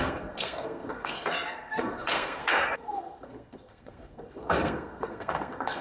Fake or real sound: fake